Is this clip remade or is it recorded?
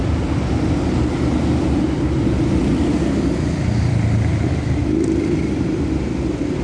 recorded